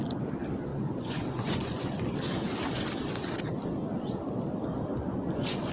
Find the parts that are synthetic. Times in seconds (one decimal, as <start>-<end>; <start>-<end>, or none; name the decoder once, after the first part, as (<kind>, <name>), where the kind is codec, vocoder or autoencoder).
0.7-2.0 (vocoder, Vocos); 5.0-5.7